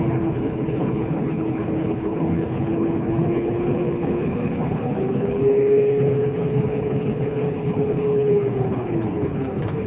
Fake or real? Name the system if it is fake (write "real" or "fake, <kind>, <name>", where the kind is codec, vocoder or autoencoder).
fake, codec, HILCodec